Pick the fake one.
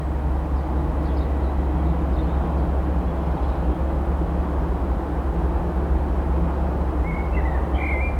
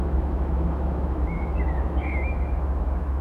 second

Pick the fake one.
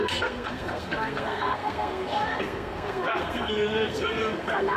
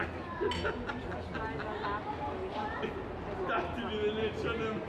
first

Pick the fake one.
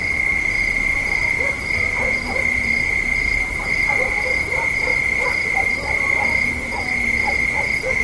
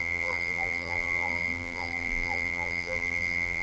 second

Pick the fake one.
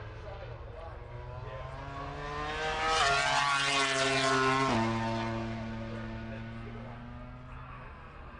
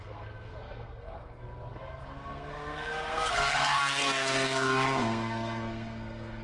second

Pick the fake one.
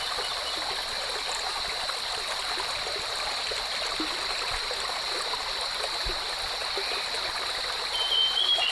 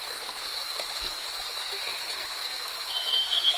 second